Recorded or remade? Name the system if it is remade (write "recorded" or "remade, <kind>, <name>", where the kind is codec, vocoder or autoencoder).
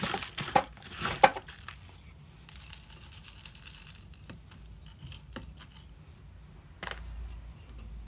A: recorded